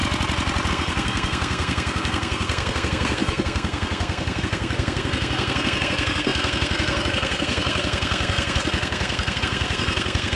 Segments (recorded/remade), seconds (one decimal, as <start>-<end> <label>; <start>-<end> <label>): 0.0-0.7 recorded; 0.7-10.3 remade